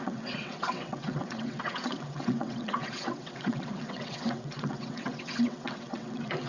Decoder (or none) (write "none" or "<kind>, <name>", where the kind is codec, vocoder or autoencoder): vocoder, WaveNeXt